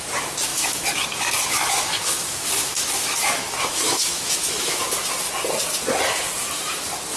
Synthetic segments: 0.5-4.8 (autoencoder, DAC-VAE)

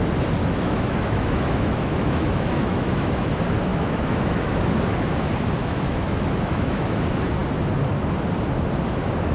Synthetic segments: 0.4-3.3 (autoencoder, DAC-VAE); 3.7-4.6; 5.6-7.0

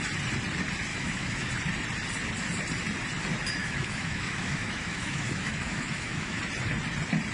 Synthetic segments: 0.9-1.5 (autoencoder, DAC-VAE); 3.6-6.4